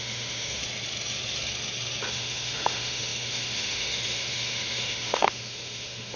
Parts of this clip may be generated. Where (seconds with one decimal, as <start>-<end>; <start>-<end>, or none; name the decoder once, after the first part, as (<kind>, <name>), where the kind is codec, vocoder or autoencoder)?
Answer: 0.0-0.6 (autoencoder, DAC-VAE); 2.1-6.2